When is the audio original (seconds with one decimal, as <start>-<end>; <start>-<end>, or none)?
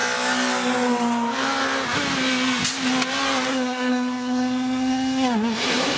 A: 0.0-3.5